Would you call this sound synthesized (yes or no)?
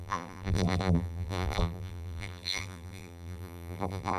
yes